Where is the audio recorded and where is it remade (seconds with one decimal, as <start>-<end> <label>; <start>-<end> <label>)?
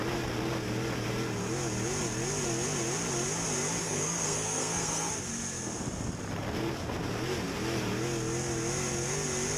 0.0-3.8 recorded; 3.8-5.1 remade; 5.1-9.6 recorded